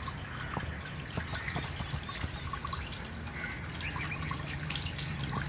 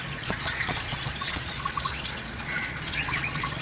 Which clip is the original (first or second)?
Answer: first